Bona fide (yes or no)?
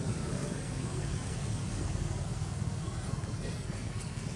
no